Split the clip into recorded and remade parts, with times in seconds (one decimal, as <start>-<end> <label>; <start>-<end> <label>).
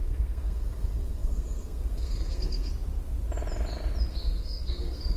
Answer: 0.0-2.7 remade; 2.7-4.1 recorded; 4.1-5.2 remade